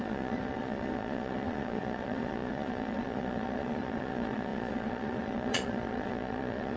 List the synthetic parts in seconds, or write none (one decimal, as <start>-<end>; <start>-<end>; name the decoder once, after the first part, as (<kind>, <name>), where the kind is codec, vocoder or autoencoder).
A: 0.0-6.8 (vocoder, Vocos)